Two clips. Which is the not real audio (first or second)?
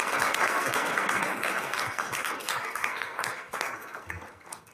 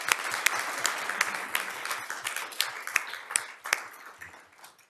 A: first